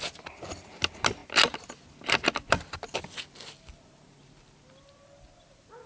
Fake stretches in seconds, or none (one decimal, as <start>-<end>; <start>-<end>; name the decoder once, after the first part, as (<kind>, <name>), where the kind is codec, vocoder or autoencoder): none